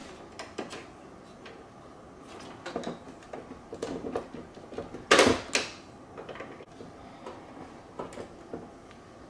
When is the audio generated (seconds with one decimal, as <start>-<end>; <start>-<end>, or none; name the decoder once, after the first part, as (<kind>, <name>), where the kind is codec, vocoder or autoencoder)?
none